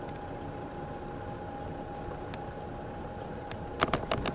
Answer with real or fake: real